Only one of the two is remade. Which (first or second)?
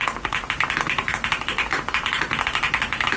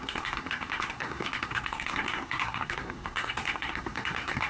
second